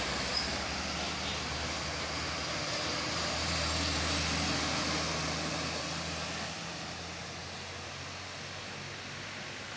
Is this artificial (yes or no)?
no